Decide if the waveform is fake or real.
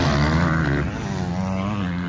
real